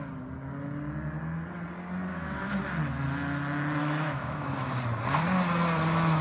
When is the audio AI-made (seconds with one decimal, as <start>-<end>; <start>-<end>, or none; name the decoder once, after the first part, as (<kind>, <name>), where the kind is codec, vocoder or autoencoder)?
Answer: 2.1-2.6 (autoencoder, DAC-VAE); 3.8-4.7